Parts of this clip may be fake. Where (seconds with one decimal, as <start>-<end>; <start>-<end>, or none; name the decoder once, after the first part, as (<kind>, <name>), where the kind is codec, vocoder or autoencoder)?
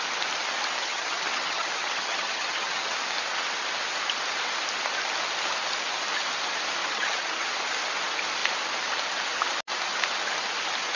0.8-2.9 (vocoder, HiFi-GAN); 6.8-7.5